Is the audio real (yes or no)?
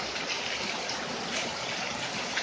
yes